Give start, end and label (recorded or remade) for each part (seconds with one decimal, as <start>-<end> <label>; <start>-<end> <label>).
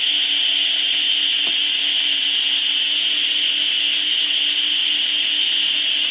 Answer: 0.0-6.1 recorded